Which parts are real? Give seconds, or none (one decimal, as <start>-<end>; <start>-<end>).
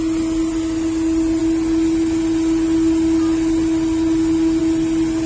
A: 0.0-5.3